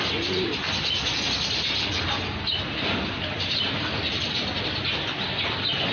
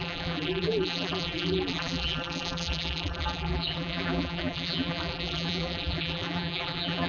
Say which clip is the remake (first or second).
second